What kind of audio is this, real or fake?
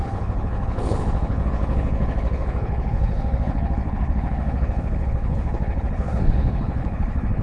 fake